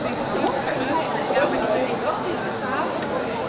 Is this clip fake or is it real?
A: real